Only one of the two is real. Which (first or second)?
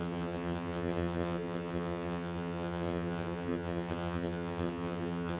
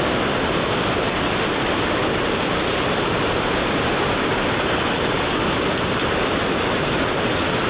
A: second